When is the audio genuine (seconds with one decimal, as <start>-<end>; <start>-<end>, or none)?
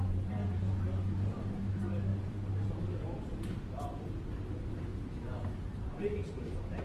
4.9-5.8